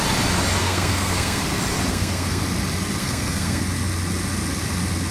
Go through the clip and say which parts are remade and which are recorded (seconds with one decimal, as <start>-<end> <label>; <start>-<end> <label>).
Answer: 0.0-0.6 recorded; 0.6-1.4 remade; 1.4-1.9 recorded; 1.9-2.4 remade; 2.4-3.0 recorded; 3.0-3.6 remade; 3.6-5.1 recorded